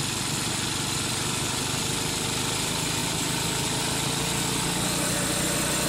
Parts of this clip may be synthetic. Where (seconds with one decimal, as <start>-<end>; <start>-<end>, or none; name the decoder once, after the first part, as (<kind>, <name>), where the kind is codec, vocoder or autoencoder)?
none